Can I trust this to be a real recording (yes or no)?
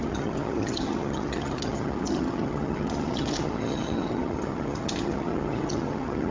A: no